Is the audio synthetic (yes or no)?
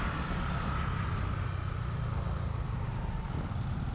no